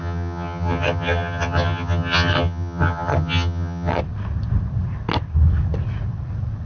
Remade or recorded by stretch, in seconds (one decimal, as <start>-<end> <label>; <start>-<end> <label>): 0.0-4.0 remade; 4.0-6.7 recorded